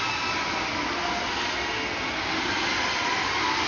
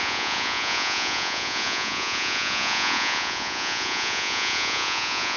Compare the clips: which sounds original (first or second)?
first